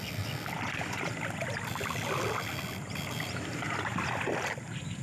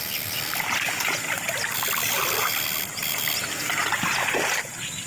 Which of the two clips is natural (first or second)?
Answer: second